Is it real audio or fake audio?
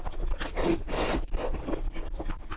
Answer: real